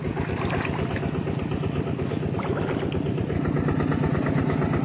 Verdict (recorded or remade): recorded